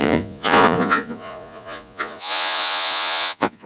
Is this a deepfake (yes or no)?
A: yes